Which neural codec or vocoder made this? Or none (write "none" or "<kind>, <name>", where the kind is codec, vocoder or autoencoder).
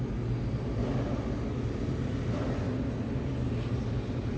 none